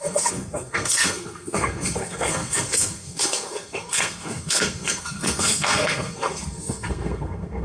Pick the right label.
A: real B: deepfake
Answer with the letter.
B